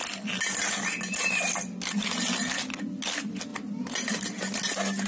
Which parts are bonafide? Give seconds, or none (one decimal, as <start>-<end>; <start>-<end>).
0.0-5.1